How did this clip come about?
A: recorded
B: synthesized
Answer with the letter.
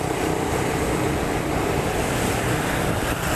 B